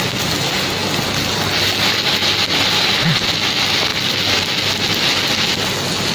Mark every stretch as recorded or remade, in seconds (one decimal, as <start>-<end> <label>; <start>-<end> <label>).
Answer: 0.0-6.1 recorded